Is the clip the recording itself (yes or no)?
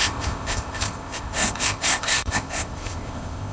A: no